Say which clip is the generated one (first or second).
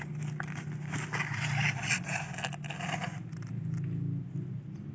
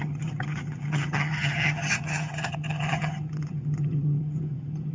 second